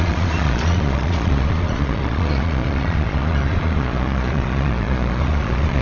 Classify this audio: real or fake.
fake